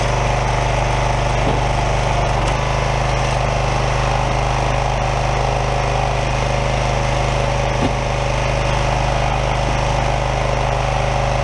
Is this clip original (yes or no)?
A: yes